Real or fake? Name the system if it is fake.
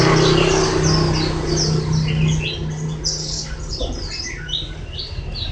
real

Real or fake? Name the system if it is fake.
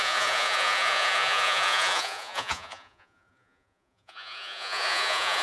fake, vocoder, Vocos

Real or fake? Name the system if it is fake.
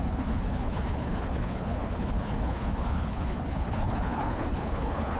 fake, codec, HILCodec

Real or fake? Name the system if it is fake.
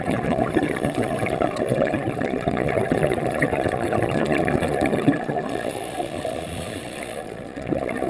fake, vocoder, Vocos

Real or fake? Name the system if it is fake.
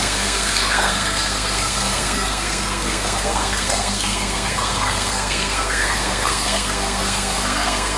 fake, codec, SNAC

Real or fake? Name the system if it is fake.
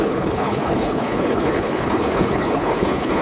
fake, codec, HILCodec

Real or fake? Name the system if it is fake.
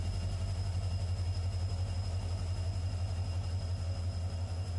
real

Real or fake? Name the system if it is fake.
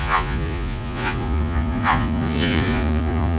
fake, vocoder, Vocos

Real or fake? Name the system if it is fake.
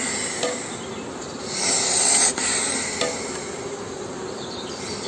real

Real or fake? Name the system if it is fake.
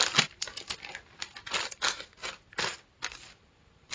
real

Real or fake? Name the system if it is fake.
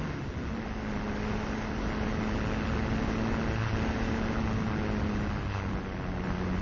real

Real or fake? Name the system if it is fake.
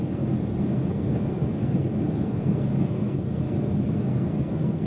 fake, codec, SNAC